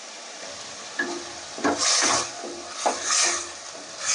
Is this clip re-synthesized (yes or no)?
no